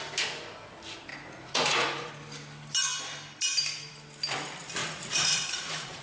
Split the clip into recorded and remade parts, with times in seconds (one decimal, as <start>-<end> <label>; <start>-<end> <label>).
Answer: 0.0-1.1 recorded; 1.1-2.1 remade; 2.1-4.8 recorded; 4.8-6.0 remade